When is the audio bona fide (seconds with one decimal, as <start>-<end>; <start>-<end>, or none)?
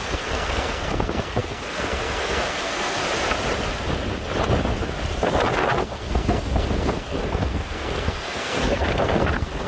3.0-5.8